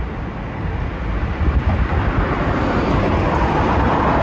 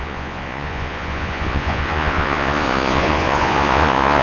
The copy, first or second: second